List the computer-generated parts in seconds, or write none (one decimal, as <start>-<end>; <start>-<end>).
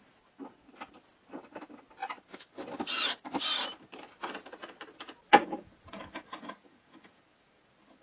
5.3-7.2